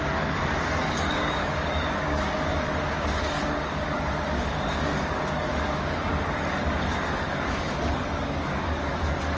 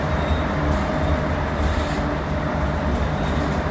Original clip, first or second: second